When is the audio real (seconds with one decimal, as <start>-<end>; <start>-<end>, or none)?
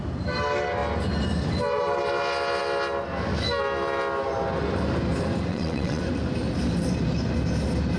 0.0-5.5; 6.0-8.0